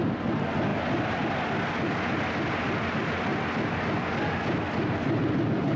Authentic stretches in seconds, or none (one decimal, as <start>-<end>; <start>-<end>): 0.0-5.8